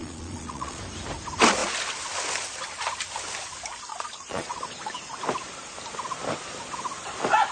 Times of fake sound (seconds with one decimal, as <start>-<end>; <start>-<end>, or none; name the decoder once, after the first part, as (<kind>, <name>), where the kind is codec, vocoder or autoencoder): 0.0-0.8 (vocoder, Vocos); 3.9-4.8